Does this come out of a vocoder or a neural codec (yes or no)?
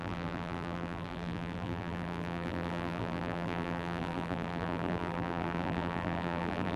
yes